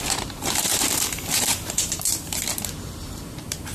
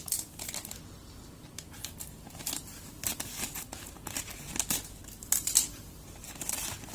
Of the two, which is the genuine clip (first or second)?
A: second